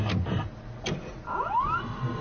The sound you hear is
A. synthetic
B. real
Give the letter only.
B